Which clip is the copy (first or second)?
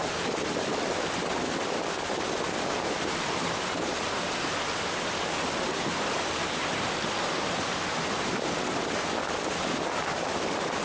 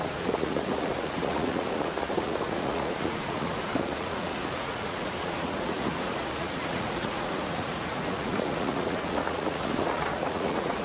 second